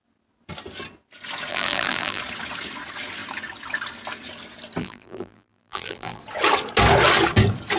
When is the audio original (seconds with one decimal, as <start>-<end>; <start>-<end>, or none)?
0.0-1.5; 2.2-4.8; 6.2-7.8